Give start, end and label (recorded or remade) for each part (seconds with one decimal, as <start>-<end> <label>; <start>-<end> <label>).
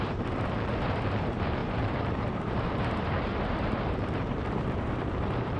0.0-5.6 remade